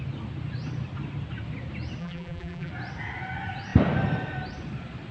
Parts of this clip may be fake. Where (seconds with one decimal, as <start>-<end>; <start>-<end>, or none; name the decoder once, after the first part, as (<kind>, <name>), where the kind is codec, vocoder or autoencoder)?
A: 2.0-2.7 (vocoder, BigVGAN v2)